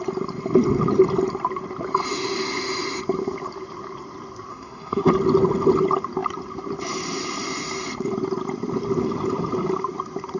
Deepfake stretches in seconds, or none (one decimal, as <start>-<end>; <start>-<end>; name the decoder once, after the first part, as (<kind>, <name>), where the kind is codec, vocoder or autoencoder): 4.5-5.1 (codec, SNAC)